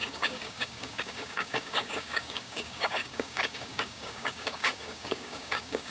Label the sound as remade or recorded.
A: remade